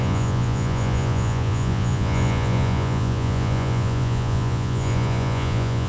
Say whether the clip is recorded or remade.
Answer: remade